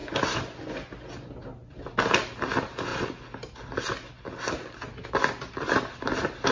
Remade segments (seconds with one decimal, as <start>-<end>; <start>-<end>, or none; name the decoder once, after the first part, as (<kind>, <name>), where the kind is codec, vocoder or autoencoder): none